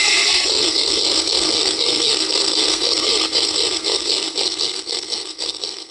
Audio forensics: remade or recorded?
remade